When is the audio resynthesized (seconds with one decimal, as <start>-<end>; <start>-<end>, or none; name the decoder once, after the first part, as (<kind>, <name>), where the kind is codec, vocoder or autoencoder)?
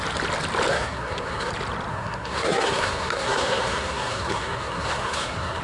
0.7-1.5 (codec, SNAC); 1.9-5.6